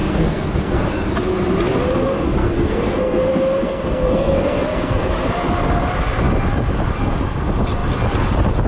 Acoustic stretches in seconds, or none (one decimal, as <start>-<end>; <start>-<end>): 0.9-2.4; 3.2-3.6; 5.1-8.7